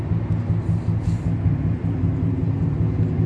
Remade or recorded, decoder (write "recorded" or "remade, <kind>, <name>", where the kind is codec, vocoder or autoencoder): recorded